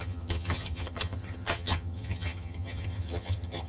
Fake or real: fake